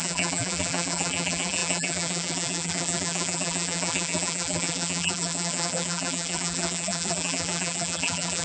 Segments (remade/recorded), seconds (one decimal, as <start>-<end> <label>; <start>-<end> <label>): 0.0-8.4 remade